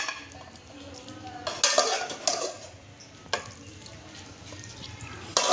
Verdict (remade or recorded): recorded